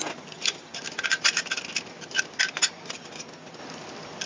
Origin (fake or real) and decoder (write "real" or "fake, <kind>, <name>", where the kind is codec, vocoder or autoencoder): real